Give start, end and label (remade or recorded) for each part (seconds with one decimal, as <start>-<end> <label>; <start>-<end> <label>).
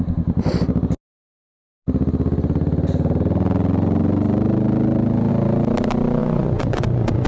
0.0-6.2 recorded; 6.2-7.3 remade